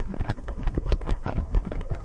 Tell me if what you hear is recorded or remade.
remade